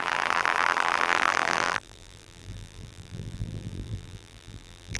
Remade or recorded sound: remade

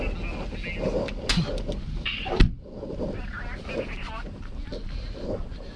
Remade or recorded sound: recorded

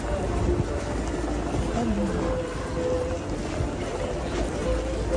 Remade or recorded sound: recorded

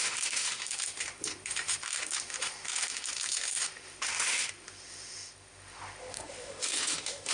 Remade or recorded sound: remade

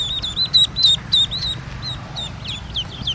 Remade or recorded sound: recorded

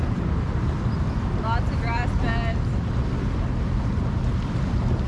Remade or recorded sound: recorded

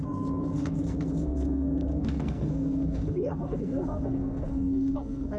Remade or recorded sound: remade